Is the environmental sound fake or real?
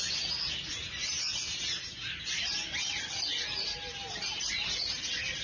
real